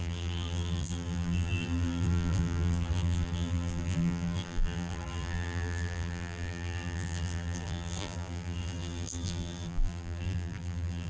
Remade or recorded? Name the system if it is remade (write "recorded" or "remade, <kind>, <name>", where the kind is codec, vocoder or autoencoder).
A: remade, vocoder, BigVGAN v2